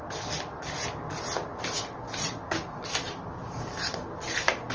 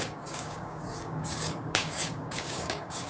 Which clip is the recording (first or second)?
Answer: first